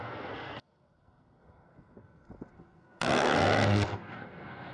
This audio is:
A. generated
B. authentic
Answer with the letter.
A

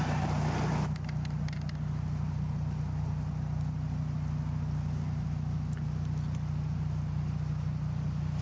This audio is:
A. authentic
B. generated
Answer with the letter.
A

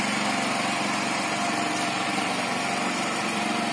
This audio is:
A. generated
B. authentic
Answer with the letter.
B